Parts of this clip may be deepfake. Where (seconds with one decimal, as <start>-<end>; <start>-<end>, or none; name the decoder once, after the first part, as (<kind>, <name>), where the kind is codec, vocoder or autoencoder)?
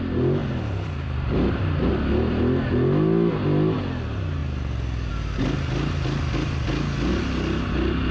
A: 0.4-1.9 (vocoder, BigVGAN v2)